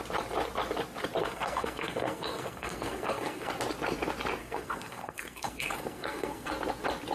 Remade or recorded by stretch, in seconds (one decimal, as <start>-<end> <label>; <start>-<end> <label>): 0.0-1.2 recorded; 1.2-3.5 remade; 3.5-4.4 recorded; 4.4-6.5 remade; 6.5-7.1 recorded